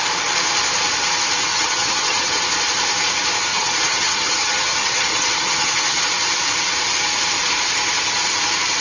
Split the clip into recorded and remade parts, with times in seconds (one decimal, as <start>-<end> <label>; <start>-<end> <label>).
0.0-1.5 recorded; 1.5-2.4 remade; 2.4-3.5 recorded; 3.5-6.0 remade; 6.0-8.8 recorded